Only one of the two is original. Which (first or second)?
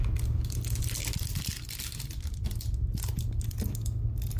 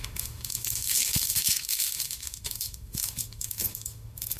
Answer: first